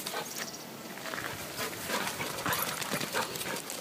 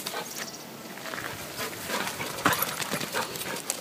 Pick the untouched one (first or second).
second